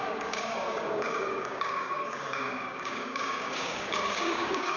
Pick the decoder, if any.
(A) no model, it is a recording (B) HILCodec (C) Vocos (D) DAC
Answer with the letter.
D